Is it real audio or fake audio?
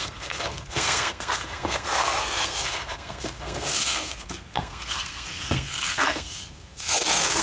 fake